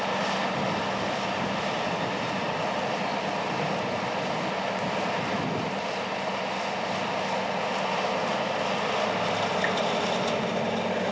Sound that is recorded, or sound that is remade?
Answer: recorded